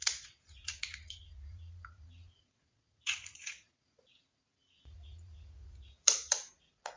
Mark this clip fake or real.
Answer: fake